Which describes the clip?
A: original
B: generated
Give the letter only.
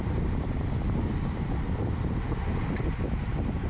B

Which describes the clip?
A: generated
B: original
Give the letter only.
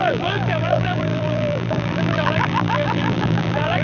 A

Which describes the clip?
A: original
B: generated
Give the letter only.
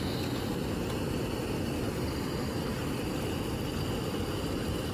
A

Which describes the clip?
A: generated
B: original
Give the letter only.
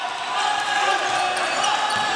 A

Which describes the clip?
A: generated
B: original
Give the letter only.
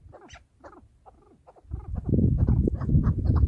B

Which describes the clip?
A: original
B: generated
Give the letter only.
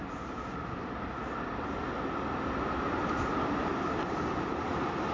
A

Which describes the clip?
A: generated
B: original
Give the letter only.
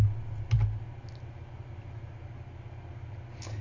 B